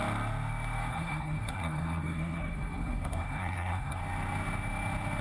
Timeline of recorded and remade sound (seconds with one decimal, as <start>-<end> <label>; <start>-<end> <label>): 0.0-0.9 recorded; 0.9-4.0 remade; 4.0-5.2 recorded